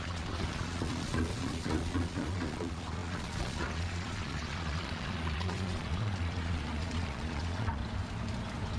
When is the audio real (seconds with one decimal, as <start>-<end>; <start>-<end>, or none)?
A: 7.8-8.8